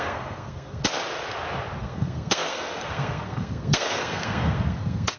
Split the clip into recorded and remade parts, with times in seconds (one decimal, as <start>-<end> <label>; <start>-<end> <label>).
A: 0.0-0.8 remade; 0.8-1.8 recorded; 1.8-5.2 remade